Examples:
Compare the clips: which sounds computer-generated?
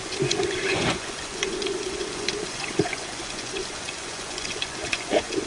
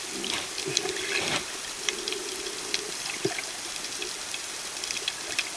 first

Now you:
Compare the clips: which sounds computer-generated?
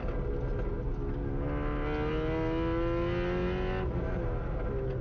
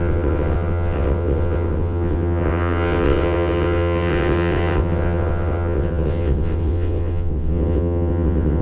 second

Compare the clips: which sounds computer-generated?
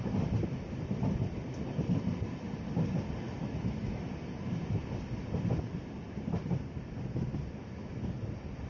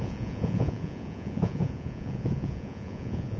second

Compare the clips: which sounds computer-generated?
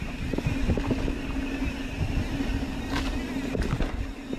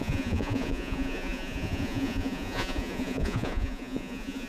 second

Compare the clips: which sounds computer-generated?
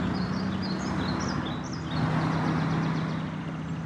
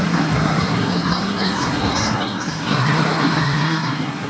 second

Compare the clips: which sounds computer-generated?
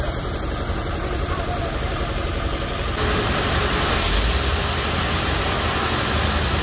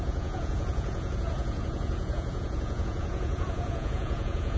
second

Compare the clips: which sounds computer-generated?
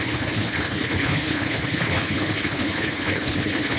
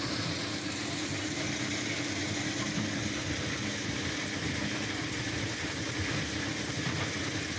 first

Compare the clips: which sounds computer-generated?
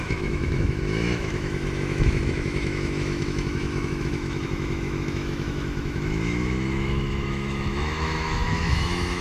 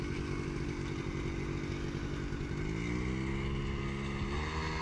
first